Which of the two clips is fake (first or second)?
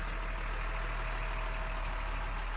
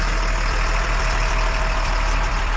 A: second